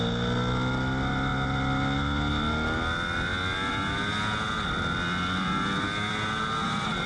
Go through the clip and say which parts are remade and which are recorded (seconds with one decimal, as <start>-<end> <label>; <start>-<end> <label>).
0.0-7.1 recorded